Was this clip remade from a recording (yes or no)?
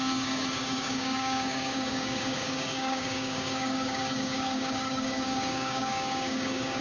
yes